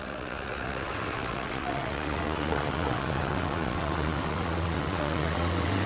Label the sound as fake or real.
fake